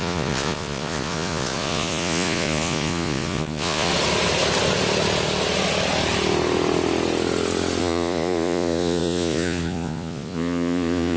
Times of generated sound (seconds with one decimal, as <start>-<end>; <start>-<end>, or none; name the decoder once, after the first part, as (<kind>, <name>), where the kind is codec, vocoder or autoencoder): 0.0-3.9 (vocoder, Vocos); 7.8-11.2